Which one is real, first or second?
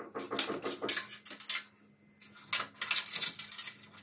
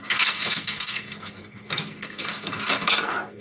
first